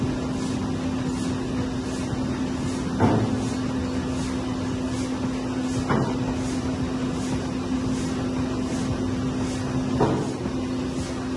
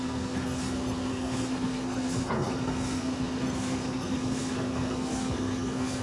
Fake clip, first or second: second